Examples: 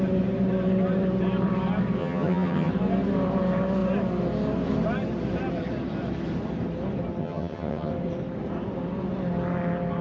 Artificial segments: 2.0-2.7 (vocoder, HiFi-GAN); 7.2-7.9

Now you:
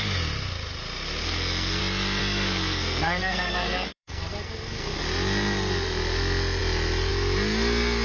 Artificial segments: 1.2-1.8 (codec, SNAC); 2.2-5.0